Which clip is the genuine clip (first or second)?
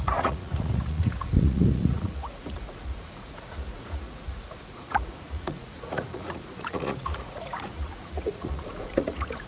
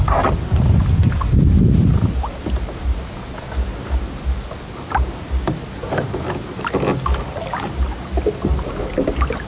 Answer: second